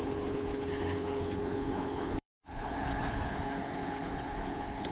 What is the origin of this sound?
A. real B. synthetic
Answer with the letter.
B